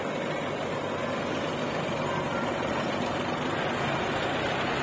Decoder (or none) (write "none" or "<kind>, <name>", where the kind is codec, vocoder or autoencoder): none